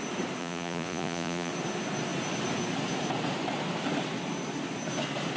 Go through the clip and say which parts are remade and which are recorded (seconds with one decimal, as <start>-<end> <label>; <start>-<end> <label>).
0.0-0.4 recorded; 0.4-1.5 remade; 1.5-5.4 recorded